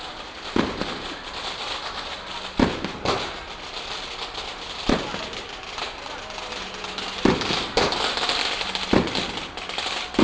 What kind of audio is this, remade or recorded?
recorded